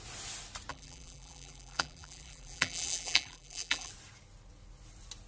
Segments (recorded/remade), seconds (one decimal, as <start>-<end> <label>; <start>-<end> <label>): 0.0-0.7 recorded; 0.7-3.9 remade; 3.9-5.3 recorded